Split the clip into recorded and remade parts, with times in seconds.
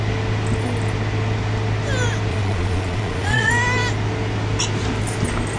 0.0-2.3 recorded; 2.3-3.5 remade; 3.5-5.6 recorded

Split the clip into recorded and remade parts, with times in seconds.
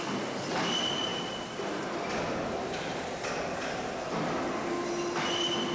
0.0-5.7 recorded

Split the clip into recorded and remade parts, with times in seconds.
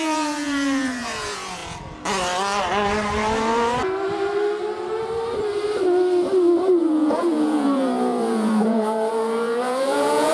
0.0-1.6 remade; 1.6-6.8 recorded; 6.8-10.3 remade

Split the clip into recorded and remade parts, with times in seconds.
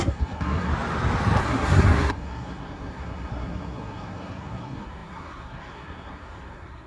0.0-0.7 remade; 0.7-1.4 recorded; 1.4-6.9 remade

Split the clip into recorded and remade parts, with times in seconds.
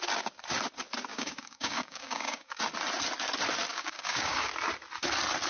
0.0-1.1 recorded; 1.1-2.6 remade; 2.6-3.7 recorded; 3.7-4.5 remade; 4.5-5.5 recorded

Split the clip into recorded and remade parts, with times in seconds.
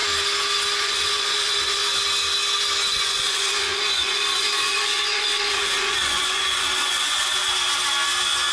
0.0-0.8 recorded; 0.8-1.8 remade; 1.8-2.9 recorded; 2.9-7.4 remade; 7.4-8.5 recorded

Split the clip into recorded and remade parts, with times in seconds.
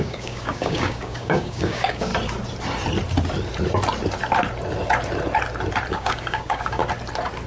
0.0-2.1 remade; 2.1-5.9 recorded; 5.9-6.8 remade; 6.8-7.5 recorded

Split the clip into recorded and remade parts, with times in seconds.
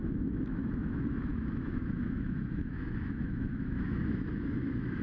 0.0-5.0 remade